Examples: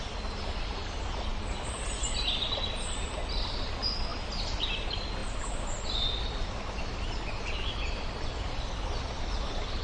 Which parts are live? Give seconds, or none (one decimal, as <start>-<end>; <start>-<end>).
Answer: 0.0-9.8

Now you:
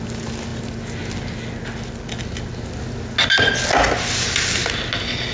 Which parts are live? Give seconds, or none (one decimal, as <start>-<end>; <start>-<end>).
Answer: 0.0-5.3

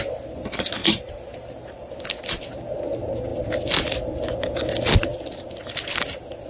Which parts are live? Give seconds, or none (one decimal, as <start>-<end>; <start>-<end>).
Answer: 0.0-0.8; 1.9-6.5

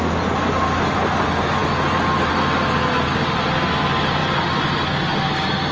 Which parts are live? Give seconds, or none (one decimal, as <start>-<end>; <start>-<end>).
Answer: 0.0-5.7

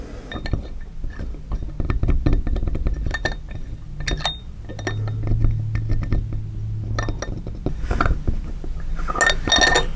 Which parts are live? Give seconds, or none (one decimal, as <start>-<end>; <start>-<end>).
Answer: 0.0-10.0

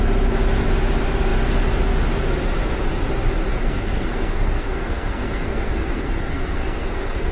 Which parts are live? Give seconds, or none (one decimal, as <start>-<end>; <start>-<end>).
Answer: 0.0-3.6